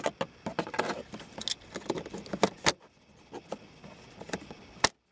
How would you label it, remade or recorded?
recorded